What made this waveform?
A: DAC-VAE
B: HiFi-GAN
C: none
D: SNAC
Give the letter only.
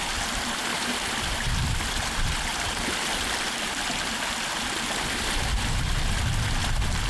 C